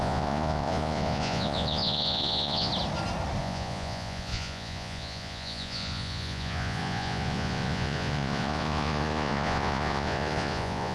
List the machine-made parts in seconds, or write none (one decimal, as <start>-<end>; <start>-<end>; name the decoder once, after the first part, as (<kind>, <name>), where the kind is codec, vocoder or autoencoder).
0.0-2.7 (vocoder, Vocos); 3.4-10.9